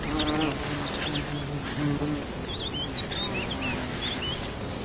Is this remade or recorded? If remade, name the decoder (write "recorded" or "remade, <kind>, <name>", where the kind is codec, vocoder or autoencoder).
recorded